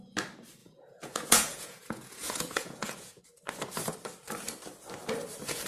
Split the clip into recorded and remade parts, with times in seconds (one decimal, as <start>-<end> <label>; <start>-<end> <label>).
0.0-0.6 recorded; 0.6-3.2 remade; 3.2-5.7 recorded